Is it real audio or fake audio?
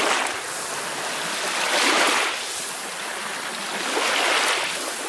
real